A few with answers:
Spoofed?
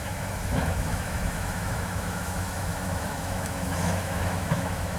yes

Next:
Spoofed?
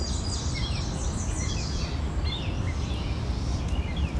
no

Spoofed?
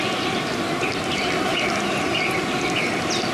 no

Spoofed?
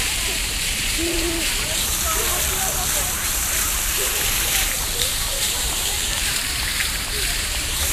yes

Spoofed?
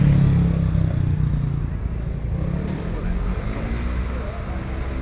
no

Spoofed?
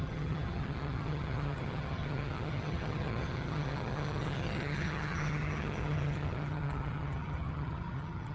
yes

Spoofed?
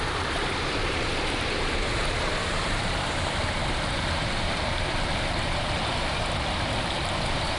yes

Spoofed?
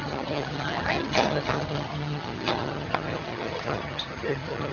yes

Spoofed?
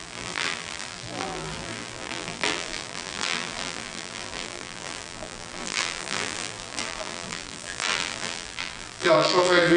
yes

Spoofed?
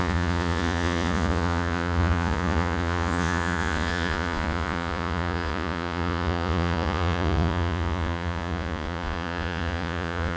yes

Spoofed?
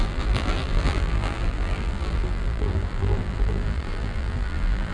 yes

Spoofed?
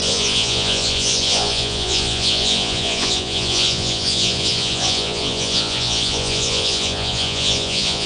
yes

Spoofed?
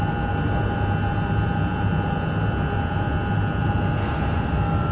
no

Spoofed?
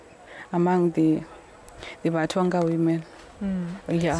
no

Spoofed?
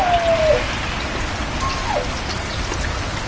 no